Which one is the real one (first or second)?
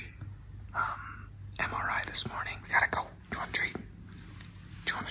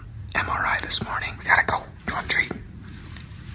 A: first